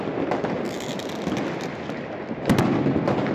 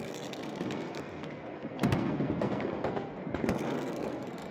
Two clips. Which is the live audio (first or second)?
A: first